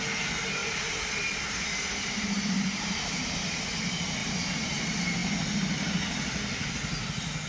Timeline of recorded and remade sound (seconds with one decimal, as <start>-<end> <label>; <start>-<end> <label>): 0.0-0.6 recorded; 0.6-3.6 remade; 3.6-4.2 recorded; 4.2-4.8 remade; 4.8-7.5 recorded